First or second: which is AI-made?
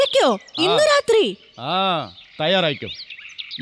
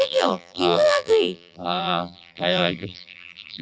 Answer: second